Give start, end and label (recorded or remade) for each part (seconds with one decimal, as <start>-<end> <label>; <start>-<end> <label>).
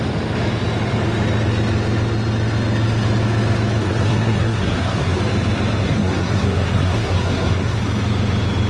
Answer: 0.0-3.8 recorded; 3.8-5.2 remade; 5.2-5.8 recorded; 5.8-7.8 remade; 7.8-8.7 recorded